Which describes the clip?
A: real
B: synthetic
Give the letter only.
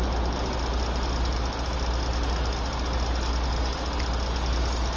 A